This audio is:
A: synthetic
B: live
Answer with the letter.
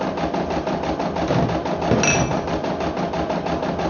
B